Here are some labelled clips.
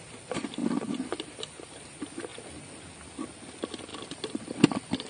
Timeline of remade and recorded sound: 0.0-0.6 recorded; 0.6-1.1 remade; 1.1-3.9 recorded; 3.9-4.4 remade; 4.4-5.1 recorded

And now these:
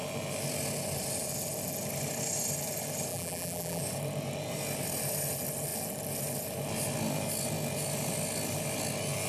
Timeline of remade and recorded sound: 0.0-3.1 recorded; 3.1-3.8 remade; 3.8-9.3 recorded